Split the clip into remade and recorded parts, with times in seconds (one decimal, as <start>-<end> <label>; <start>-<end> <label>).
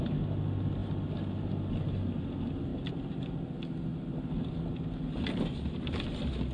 0.0-6.5 recorded